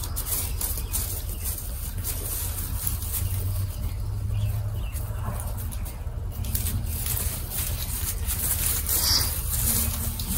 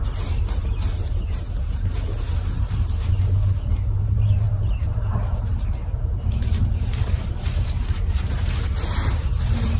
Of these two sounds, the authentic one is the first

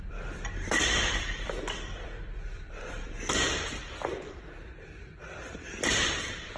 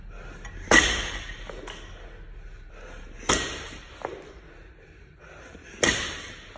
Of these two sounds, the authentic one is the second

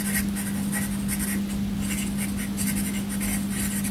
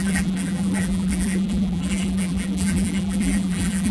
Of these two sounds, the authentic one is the first